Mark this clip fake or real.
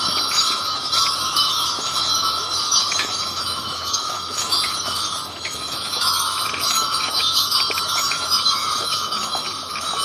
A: fake